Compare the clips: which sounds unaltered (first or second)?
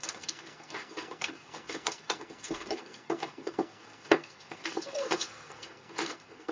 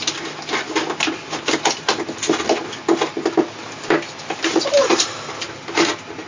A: second